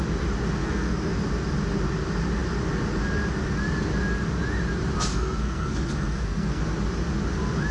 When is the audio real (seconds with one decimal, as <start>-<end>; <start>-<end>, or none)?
0.0-0.6; 1.1-5.1; 6.6-7.7